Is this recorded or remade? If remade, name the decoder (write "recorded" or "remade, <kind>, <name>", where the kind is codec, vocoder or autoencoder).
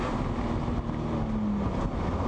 recorded